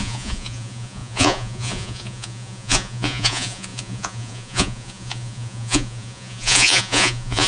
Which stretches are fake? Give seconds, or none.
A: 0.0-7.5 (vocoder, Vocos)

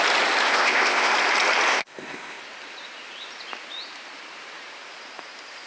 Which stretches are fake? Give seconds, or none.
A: 0.4-1.1 (codec, ZipCodec); 1.7-2.4

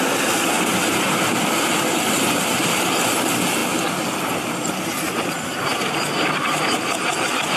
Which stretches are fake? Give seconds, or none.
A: none